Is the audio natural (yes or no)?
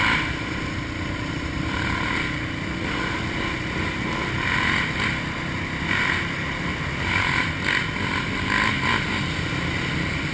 yes